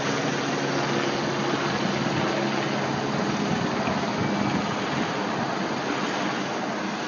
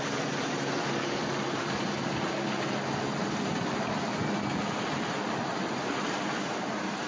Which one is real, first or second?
first